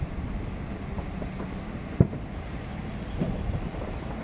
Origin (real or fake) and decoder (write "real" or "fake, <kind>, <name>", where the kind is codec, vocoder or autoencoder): real